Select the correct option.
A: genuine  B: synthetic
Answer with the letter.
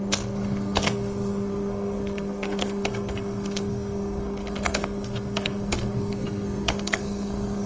B